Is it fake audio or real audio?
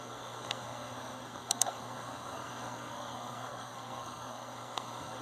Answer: fake